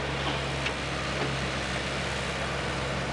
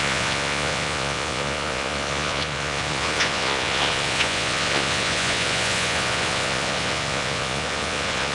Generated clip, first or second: second